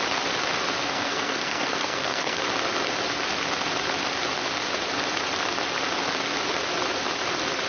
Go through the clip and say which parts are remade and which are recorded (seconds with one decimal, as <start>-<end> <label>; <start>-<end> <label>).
0.0-0.8 recorded; 0.8-2.4 remade; 2.4-7.7 recorded